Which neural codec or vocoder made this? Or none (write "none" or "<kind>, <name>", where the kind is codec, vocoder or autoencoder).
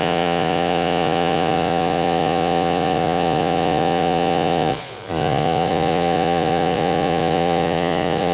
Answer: vocoder, Vocos